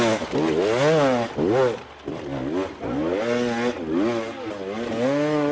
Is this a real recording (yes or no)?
yes